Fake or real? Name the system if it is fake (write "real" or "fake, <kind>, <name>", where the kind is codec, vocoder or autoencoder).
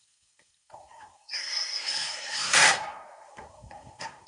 fake, codec, SNAC